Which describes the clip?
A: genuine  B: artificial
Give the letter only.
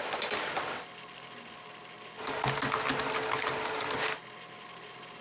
A